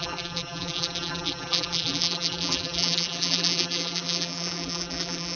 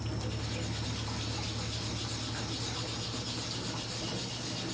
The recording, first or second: second